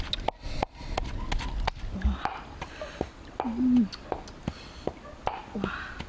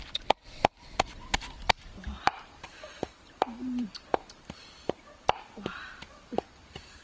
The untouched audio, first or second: first